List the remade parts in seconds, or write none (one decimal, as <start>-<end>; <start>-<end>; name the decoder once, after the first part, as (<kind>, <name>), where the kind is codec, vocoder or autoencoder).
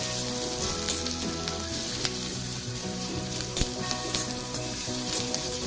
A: 2.3-5.7 (vocoder, BigVGAN v2)